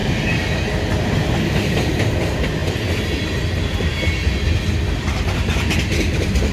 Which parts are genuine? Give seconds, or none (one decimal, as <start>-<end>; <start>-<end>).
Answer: 0.0-0.9; 2.6-5.0